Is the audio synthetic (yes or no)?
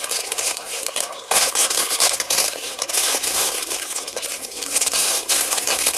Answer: yes